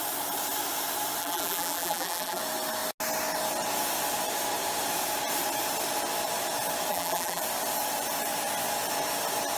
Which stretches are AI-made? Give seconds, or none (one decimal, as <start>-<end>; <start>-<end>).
1.2-2.4; 6.9-7.4